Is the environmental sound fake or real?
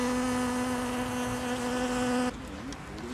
real